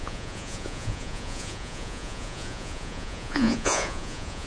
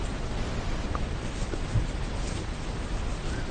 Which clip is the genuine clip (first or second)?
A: second